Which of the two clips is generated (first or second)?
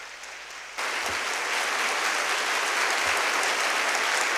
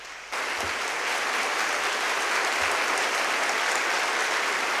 second